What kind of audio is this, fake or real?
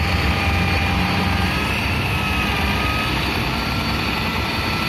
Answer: real